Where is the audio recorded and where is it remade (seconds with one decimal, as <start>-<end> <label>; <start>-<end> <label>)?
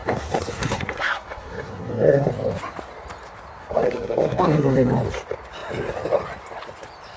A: 0.0-2.3 remade; 2.3-3.6 recorded; 3.6-4.9 remade; 4.9-7.2 recorded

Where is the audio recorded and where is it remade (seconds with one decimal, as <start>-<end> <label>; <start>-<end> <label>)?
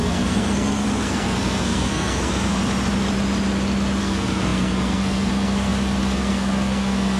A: 0.0-2.6 remade; 2.6-4.0 recorded; 4.0-7.2 remade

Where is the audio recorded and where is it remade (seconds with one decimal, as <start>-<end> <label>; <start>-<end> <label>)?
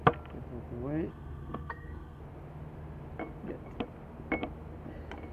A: 0.0-1.1 recorded; 1.1-2.2 remade; 2.2-5.3 recorded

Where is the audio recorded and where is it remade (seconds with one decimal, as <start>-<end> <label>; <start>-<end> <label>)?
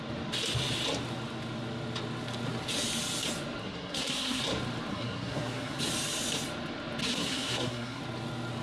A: 0.0-3.6 recorded; 3.6-4.4 remade; 4.4-4.9 recorded; 4.9-5.8 remade; 5.8-7.0 recorded; 7.0-8.0 remade; 8.0-8.6 recorded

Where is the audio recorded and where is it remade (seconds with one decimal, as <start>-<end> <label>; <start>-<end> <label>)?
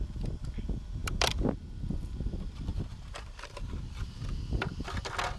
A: 0.0-5.4 recorded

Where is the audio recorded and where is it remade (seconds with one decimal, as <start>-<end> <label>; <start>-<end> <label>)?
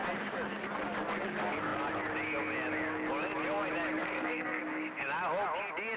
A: 0.0-4.0 recorded; 4.0-4.6 remade; 4.6-6.0 recorded